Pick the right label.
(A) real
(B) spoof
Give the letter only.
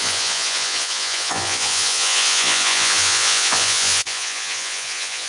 B